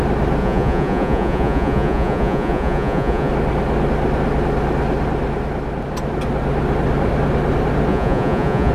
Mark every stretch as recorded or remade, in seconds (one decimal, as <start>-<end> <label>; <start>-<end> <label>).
0.0-0.4 recorded; 0.4-3.3 remade; 3.3-7.9 recorded; 7.9-8.7 remade

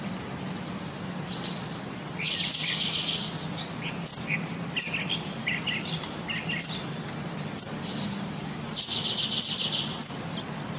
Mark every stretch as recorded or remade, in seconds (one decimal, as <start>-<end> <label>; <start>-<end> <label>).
0.0-10.8 recorded